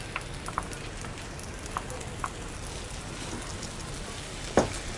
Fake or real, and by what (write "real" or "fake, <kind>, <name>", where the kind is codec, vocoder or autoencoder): real